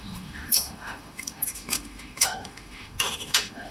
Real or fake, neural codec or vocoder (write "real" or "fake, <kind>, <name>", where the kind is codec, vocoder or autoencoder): fake, autoencoder, DAC-VAE